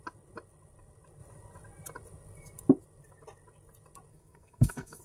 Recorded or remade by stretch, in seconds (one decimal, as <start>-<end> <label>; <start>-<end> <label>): 0.0-4.1 recorded; 4.1-5.0 remade

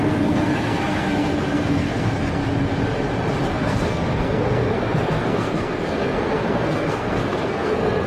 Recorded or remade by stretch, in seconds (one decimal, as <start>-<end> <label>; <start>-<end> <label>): 0.0-2.4 remade; 2.4-3.5 recorded; 3.5-8.1 remade

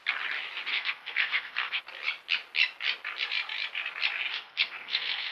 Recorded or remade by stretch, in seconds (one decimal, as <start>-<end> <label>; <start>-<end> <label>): 0.0-0.7 recorded; 0.7-1.8 remade; 1.8-4.3 recorded; 4.3-5.3 remade

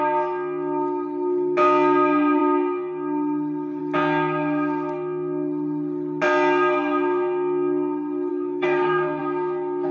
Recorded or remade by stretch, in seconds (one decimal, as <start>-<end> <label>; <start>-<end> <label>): 0.0-8.3 recorded; 8.3-9.2 remade; 9.2-9.9 recorded

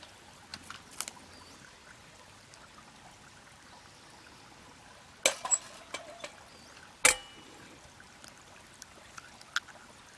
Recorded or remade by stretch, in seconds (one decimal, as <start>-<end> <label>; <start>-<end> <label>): 0.0-10.2 recorded